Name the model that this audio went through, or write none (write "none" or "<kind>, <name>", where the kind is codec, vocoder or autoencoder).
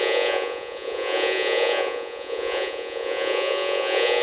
vocoder, Vocos